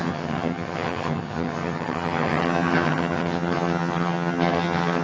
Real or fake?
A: fake